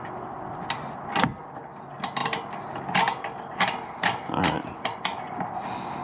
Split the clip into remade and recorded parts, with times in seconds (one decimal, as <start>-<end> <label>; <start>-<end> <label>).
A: 0.0-6.0 recorded